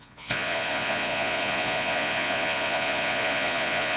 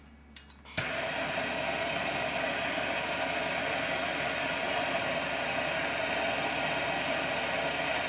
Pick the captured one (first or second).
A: second